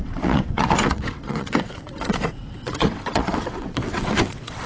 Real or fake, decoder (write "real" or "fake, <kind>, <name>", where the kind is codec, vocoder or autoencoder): fake, vocoder, WaveNeXt